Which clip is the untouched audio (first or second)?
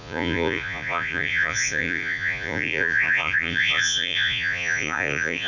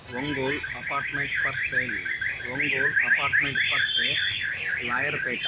second